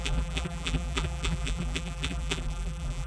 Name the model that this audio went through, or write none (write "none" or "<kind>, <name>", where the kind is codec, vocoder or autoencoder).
vocoder, BigVGAN v2